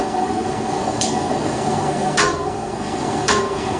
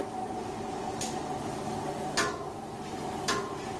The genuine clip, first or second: second